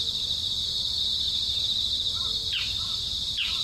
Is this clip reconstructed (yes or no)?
no